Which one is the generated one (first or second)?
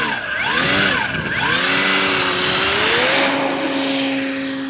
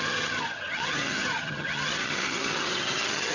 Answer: second